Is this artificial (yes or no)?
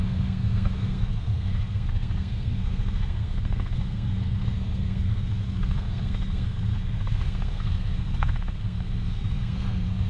yes